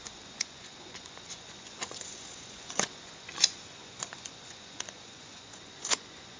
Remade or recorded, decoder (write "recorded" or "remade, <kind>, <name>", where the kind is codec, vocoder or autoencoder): remade, vocoder, Vocos